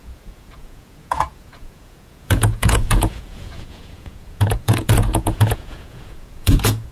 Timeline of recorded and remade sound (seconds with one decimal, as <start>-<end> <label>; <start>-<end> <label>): 0.0-6.9 remade